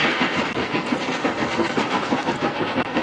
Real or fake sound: fake